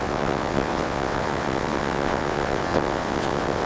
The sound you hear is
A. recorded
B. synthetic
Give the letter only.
B